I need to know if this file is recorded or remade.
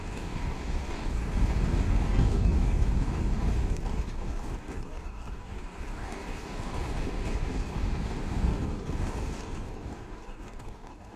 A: remade